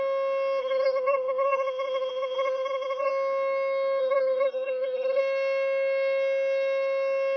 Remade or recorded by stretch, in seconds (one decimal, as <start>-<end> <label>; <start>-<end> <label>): 0.0-0.6 recorded; 0.6-3.1 remade; 3.1-4.0 recorded; 4.0-5.2 remade; 5.2-7.4 recorded